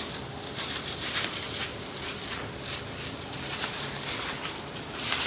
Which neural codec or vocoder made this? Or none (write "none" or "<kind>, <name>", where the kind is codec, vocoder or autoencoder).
none